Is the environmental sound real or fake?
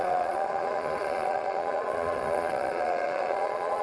fake